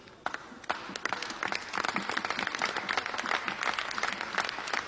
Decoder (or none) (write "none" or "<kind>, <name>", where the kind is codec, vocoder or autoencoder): none